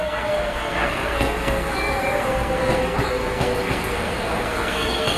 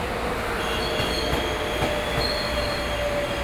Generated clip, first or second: first